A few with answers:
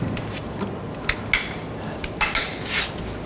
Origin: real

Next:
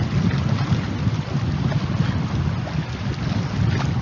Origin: real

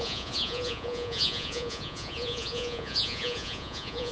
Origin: fake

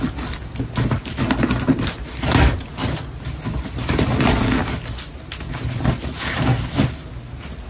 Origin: real